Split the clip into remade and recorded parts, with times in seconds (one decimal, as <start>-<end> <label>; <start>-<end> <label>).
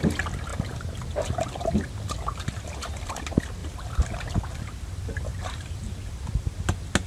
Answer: 0.0-3.6 recorded; 3.6-4.2 remade; 4.2-5.3 recorded; 5.3-6.1 remade; 6.1-7.1 recorded